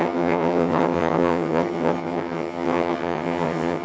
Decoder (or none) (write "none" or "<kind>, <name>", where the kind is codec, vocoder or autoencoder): vocoder, HiFi-GAN